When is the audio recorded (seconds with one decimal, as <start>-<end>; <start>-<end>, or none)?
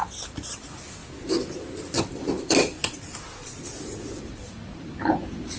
1.0-2.0; 3.1-4.2